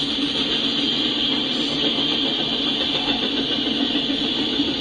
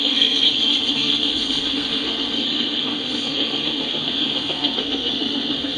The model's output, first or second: second